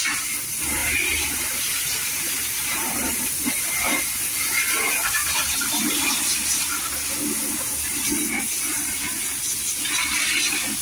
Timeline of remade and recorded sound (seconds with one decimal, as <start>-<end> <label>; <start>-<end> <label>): 0.0-0.8 recorded; 0.8-3.3 remade; 3.3-5.2 recorded; 5.2-6.1 remade; 6.1-10.8 recorded